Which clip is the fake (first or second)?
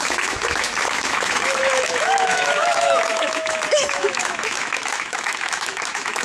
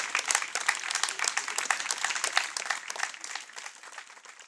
first